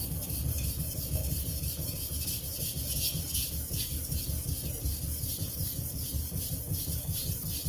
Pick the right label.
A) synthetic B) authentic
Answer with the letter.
B